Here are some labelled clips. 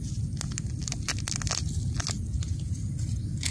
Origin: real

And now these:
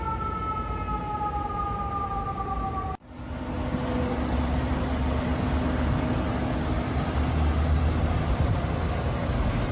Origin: real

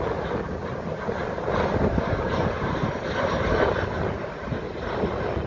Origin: real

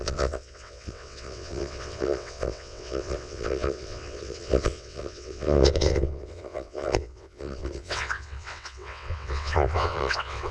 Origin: fake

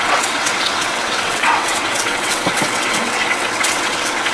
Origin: fake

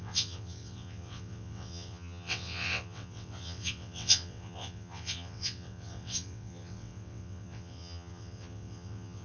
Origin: fake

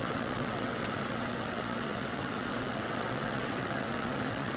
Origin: fake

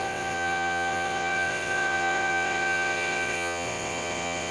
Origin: fake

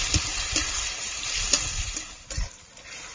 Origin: real